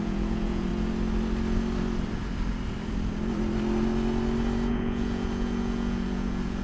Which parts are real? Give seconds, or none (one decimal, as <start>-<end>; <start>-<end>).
0.7-4.7